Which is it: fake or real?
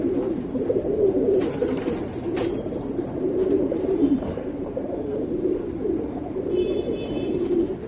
fake